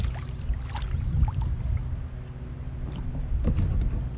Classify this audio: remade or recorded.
recorded